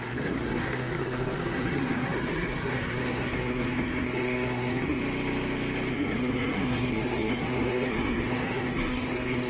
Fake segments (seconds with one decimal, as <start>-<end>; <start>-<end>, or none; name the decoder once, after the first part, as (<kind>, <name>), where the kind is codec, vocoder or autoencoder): 0.0-5.0 (codec, SNAC); 5.9-9.5